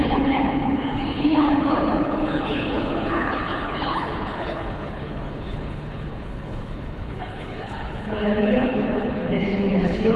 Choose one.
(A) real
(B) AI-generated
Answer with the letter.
B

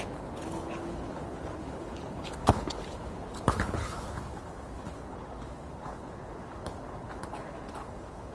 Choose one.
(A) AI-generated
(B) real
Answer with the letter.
A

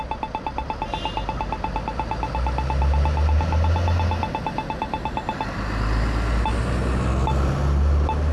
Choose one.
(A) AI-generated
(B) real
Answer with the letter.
B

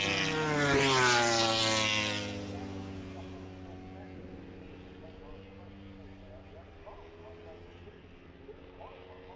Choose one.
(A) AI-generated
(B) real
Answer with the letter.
B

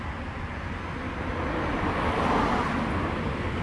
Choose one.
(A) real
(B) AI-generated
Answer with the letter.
A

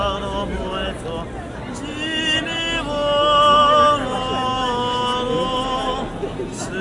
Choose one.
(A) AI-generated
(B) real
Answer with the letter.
B